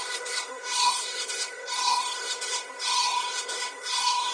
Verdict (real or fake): fake